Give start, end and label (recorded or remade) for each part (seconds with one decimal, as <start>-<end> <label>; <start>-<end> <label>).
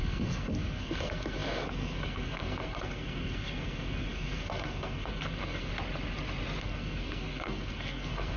0.0-5.7 remade; 5.7-6.6 recorded; 6.6-8.4 remade